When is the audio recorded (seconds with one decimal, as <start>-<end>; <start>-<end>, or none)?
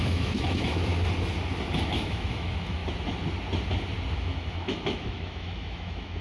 0.9-1.9; 2.8-4.1